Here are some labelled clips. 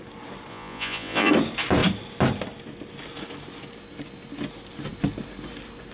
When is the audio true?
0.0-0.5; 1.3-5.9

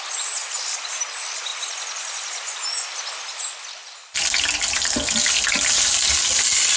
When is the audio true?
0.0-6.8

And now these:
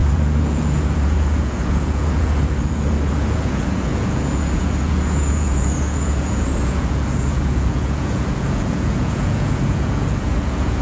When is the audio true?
none

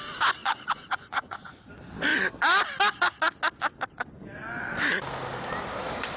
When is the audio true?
0.0-0.4; 1.7-6.2

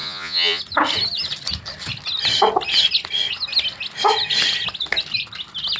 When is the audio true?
0.6-5.8

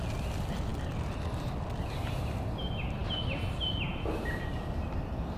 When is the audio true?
0.0-5.4